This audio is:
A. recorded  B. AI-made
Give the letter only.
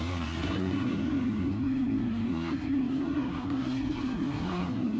B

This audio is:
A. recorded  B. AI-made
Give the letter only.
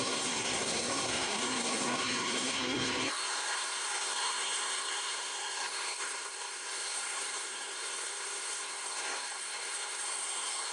B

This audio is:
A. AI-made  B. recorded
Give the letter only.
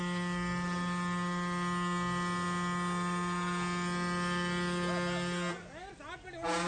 B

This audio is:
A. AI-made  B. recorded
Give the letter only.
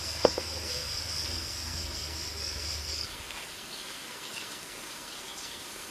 A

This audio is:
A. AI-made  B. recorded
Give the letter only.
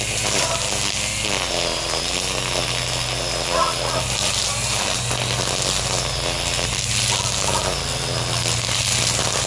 B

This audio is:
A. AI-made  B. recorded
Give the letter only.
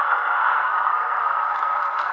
A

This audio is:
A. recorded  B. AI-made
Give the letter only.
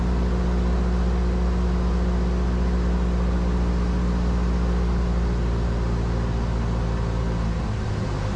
A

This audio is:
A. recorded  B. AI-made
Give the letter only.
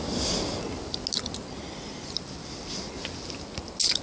A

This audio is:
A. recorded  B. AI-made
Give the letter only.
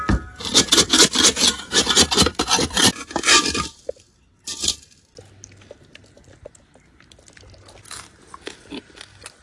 A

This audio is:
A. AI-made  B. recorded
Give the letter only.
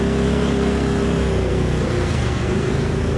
A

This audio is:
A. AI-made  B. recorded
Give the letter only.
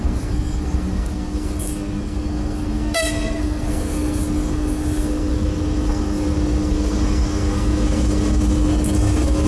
A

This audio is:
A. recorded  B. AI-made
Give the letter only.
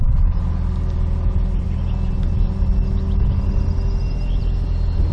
A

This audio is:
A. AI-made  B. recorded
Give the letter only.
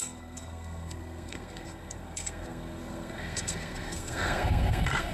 A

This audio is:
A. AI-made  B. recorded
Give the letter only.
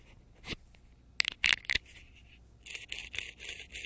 B